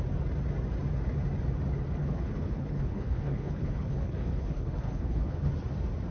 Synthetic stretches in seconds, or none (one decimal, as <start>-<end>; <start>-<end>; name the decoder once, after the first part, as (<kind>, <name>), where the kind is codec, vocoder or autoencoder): 2.0-5.5 (codec, HILCodec)